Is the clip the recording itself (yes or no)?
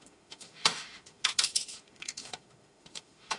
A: no